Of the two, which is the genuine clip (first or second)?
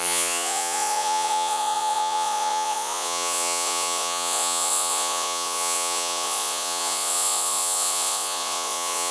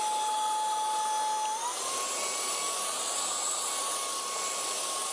second